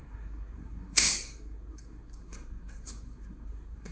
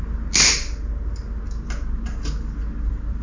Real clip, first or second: second